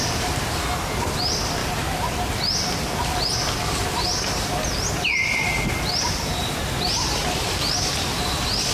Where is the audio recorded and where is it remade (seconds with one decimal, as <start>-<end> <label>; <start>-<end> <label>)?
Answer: 0.0-8.7 recorded